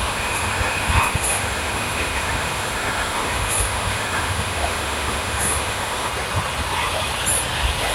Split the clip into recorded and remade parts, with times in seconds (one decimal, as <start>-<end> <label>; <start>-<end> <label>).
0.0-6.1 remade; 6.1-7.9 recorded

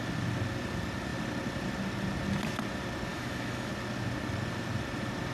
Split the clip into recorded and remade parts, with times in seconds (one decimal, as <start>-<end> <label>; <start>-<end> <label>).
0.0-3.1 recorded; 3.1-3.7 remade; 3.7-5.3 recorded

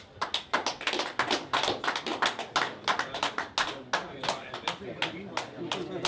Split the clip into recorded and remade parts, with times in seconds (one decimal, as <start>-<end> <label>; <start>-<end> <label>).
0.0-6.1 recorded

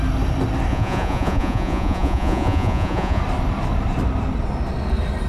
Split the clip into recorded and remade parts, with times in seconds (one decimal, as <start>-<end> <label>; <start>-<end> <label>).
0.0-0.7 recorded; 0.7-3.2 remade; 3.2-5.3 recorded

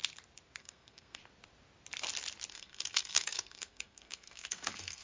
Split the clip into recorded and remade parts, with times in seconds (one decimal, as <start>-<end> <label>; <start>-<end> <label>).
0.0-0.6 recorded; 0.6-1.2 remade; 1.2-2.5 recorded; 2.5-5.0 remade

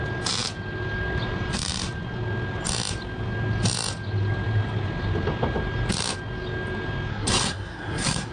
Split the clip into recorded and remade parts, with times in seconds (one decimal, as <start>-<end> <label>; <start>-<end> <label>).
0.0-7.1 recorded; 7.1-8.3 remade

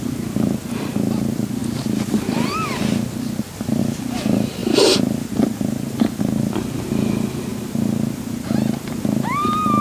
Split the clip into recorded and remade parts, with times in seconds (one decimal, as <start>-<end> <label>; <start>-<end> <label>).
0.0-9.8 recorded

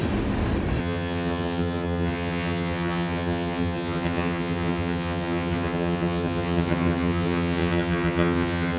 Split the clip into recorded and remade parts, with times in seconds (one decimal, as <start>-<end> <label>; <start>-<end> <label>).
0.0-0.8 recorded; 0.8-8.8 remade